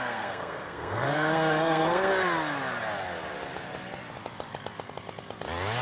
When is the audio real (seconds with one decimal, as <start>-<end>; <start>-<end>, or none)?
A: 2.1-5.8

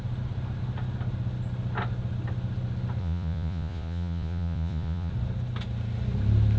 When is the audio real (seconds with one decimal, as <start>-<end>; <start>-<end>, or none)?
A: 0.0-3.0; 5.1-6.6